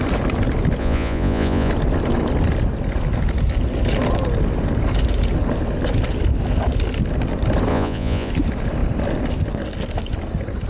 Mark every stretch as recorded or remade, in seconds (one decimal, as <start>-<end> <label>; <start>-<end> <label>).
0.0-0.8 recorded; 0.8-1.7 remade; 1.7-7.7 recorded; 7.7-8.3 remade; 8.3-10.7 recorded